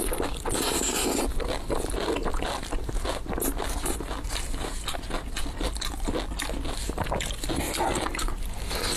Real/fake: real